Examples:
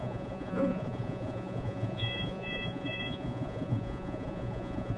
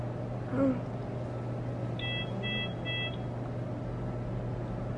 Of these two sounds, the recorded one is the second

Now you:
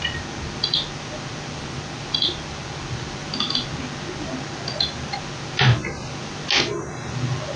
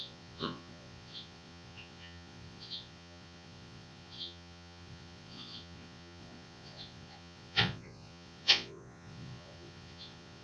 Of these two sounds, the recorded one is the first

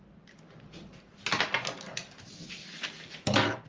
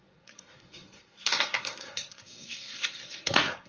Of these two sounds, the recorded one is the first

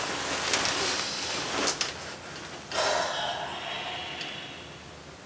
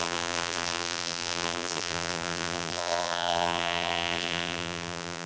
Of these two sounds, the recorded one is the first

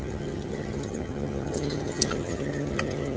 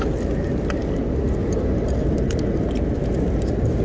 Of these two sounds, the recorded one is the second